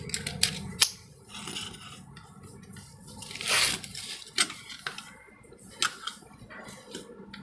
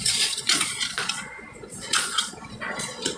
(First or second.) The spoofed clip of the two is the second